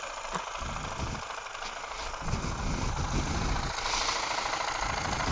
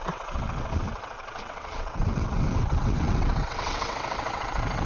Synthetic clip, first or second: second